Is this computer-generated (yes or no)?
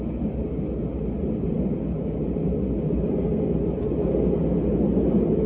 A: no